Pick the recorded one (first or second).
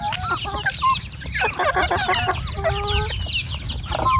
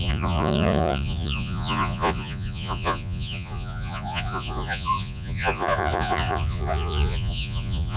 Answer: first